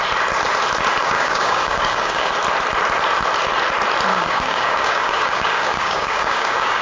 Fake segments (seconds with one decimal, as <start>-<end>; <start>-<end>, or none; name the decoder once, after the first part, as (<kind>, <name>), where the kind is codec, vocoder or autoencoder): 1.0-2.3 (codec, DAC); 4.1-6.8